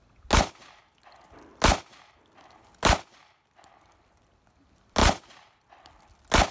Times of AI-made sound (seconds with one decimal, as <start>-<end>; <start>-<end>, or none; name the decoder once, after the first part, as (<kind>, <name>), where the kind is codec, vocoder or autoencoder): none